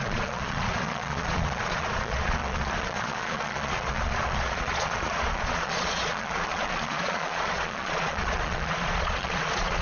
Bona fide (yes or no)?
no